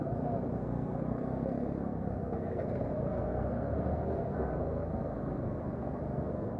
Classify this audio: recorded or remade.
remade